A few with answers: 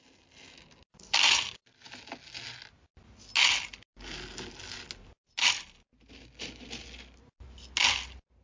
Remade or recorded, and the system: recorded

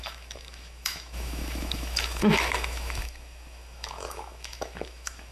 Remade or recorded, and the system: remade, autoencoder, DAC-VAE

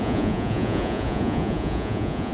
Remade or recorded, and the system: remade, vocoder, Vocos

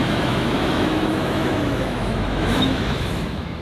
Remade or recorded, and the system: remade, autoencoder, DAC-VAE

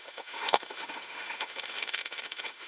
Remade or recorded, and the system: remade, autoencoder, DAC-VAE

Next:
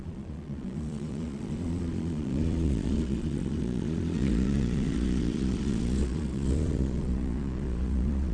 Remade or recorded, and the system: remade, vocoder, Vocos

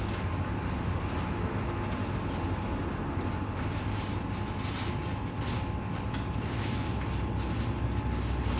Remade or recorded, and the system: recorded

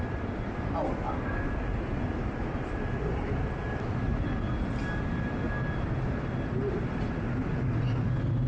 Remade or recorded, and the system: recorded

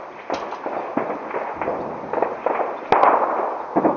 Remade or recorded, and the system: recorded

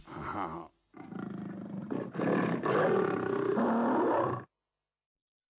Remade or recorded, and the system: recorded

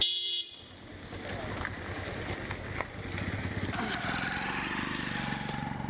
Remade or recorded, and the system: recorded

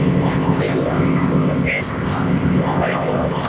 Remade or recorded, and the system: remade, codec, ZipCodec